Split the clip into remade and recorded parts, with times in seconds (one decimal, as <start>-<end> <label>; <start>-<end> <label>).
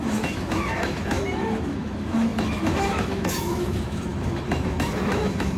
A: 0.0-5.6 remade